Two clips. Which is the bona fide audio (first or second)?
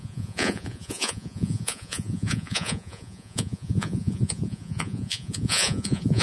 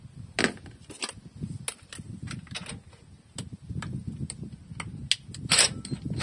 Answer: second